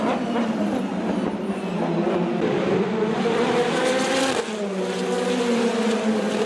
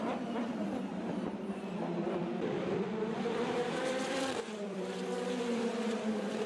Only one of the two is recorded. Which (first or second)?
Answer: first